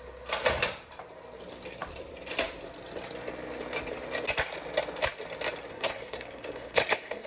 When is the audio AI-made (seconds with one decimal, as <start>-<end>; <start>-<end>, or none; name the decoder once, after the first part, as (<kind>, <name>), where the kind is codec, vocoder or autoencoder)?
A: 5.7-7.3 (codec, SNAC)